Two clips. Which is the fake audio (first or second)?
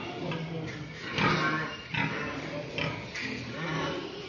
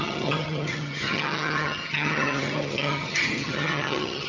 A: second